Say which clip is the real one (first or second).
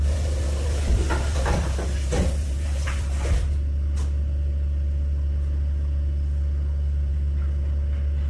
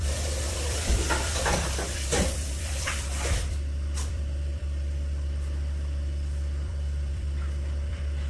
first